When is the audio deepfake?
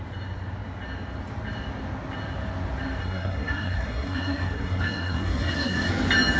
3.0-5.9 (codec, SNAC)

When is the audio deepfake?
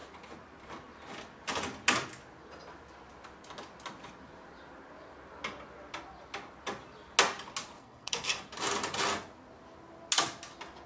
7.8-8.4 (codec, SNAC)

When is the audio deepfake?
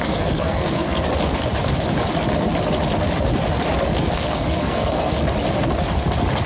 0.0-1.1 (codec, SNAC); 4.0-5.1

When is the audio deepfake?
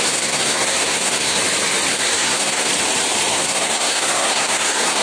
0.0-1.4 (codec, SNAC); 1.9-2.7; 3.3-5.0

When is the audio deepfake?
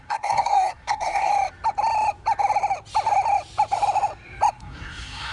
0.0-1.3 (codec, SNAC); 4.5-5.3